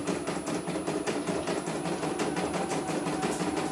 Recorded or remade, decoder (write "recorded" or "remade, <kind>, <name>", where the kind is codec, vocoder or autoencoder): recorded